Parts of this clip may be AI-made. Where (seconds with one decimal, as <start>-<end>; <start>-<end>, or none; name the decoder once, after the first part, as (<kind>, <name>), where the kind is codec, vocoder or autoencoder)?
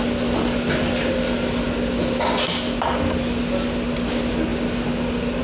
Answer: none